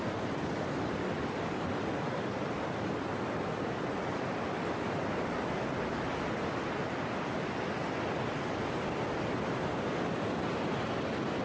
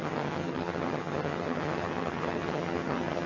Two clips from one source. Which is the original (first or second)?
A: first